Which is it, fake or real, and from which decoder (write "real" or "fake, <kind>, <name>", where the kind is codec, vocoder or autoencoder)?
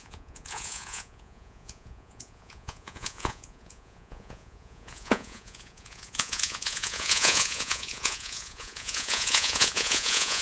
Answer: fake, vocoder, Vocos